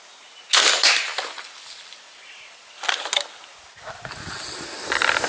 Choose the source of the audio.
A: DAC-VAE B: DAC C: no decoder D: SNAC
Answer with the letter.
C